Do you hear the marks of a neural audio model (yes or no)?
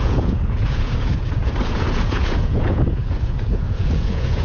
yes